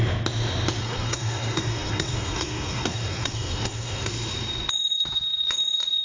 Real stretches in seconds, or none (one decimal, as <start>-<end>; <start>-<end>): 0.0-0.8; 4.1-6.0